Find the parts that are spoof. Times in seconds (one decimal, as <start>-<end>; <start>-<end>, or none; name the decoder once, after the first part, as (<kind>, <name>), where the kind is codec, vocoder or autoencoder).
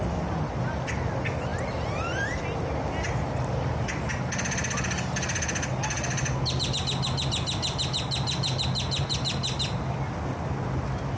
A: 1.5-2.4 (vocoder, BigVGAN v2)